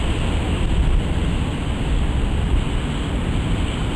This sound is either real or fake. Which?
real